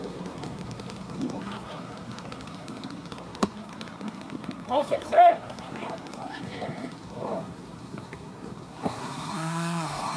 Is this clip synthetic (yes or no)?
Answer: yes